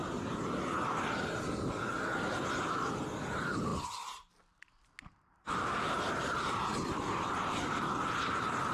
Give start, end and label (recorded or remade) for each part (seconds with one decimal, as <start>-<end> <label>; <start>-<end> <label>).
0.0-8.7 recorded